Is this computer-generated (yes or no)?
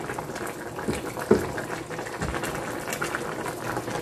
no